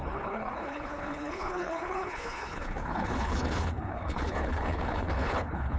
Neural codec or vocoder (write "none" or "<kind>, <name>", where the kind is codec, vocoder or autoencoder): codec, HILCodec